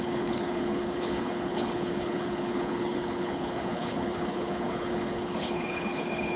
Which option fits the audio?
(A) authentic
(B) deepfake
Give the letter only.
B